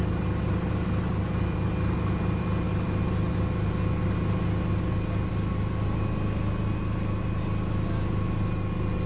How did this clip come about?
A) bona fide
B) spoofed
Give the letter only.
A